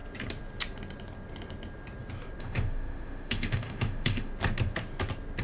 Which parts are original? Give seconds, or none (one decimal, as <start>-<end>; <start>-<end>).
0.0-2.4; 4.3-5.4